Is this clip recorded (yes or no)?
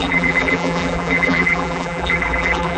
no